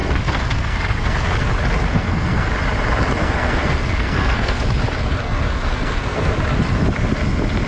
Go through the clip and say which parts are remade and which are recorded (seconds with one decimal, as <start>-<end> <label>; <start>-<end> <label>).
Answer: 0.0-1.5 remade; 1.5-1.9 recorded; 1.9-2.5 remade; 2.5-3.2 recorded; 3.2-4.6 remade; 4.6-5.2 recorded; 5.2-6.3 remade; 6.3-7.7 recorded